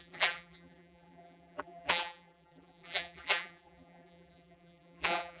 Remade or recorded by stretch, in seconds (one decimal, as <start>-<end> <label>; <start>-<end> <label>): 0.0-5.4 remade